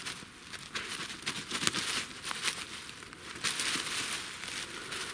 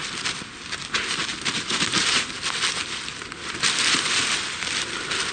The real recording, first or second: first